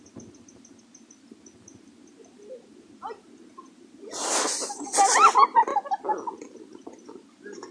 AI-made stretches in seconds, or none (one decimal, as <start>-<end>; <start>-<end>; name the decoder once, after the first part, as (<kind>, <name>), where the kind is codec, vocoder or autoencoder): none